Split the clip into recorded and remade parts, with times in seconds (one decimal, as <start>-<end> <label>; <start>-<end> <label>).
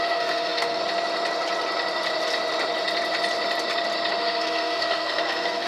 0.0-0.8 remade; 0.8-4.2 recorded; 4.2-5.7 remade